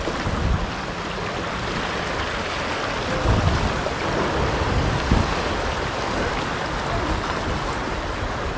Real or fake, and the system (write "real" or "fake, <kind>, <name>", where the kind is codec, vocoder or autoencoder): real